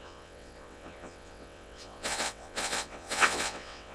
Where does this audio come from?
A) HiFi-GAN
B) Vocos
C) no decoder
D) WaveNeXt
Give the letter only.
D